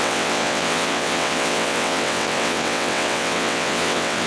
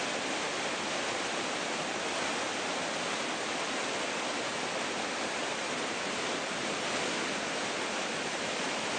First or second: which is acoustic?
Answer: second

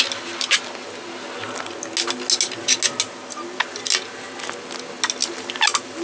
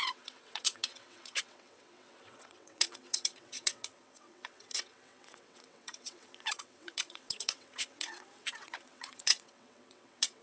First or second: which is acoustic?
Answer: first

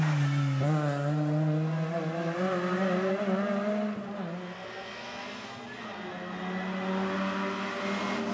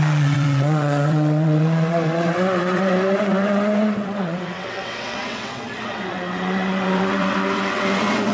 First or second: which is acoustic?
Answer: first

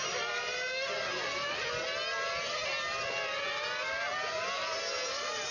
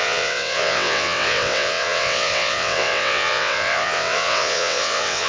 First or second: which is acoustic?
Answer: first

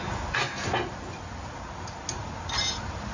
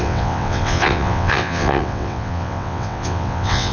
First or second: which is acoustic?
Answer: first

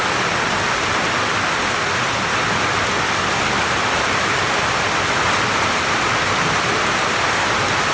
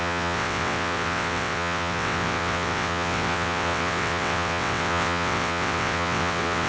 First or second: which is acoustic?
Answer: first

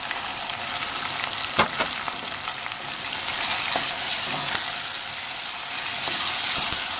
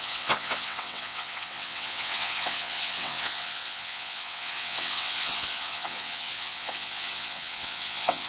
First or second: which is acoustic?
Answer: first